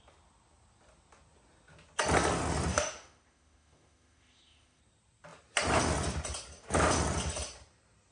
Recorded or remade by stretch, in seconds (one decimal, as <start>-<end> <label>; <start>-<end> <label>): 0.0-2.7 recorded; 2.7-4.8 remade; 4.8-8.1 recorded